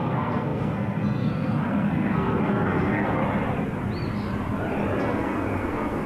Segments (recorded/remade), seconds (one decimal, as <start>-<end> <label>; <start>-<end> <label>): 0.0-3.2 remade; 3.2-5.0 recorded; 5.0-6.1 remade